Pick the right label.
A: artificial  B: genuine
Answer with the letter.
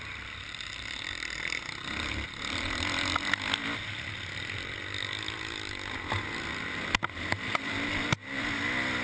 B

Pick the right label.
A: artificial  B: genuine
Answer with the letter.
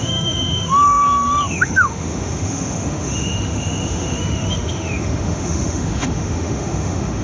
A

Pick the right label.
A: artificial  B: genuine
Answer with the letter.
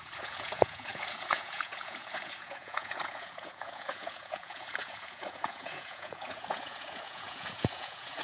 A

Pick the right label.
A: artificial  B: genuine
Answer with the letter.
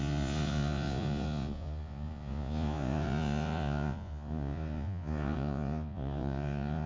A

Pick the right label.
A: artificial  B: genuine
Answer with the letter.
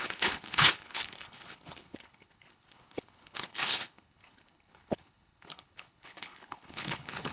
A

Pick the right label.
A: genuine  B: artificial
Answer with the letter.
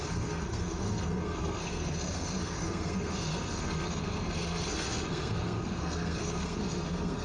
B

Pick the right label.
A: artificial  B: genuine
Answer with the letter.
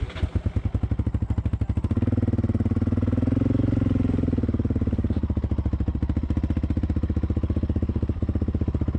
B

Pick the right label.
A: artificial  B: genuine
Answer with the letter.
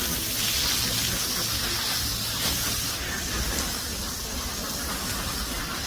B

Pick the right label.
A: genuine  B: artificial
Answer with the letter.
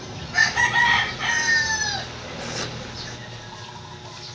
A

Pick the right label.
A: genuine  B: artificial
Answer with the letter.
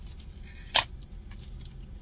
A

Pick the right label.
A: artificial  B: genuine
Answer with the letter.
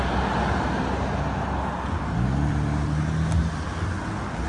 B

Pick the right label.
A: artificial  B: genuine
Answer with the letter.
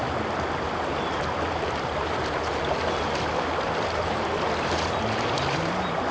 B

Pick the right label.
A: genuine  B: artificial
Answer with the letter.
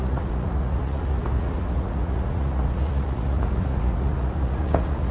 B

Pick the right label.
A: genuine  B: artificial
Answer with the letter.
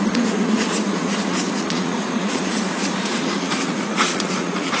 B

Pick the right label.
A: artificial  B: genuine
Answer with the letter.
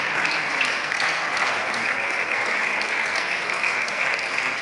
A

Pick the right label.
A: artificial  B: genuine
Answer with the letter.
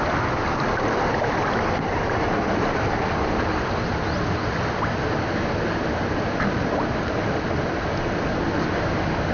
B